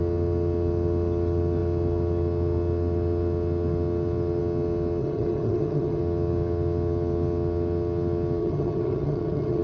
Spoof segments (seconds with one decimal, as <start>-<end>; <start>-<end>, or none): 5.0-6.0; 8.4-9.6